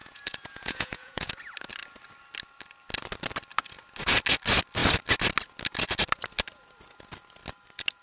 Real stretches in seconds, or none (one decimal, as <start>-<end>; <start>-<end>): 1.3-8.0